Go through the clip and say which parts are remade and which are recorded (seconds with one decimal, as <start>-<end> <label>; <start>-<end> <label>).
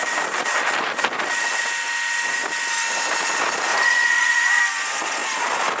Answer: 0.0-3.7 recorded; 3.7-4.6 remade; 4.6-5.8 recorded